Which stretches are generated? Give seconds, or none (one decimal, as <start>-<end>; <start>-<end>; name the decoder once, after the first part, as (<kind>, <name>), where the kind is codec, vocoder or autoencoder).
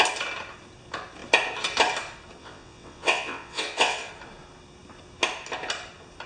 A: 2.4-4.1 (vocoder, WaveNeXt)